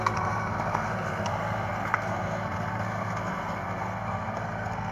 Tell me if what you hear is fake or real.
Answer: fake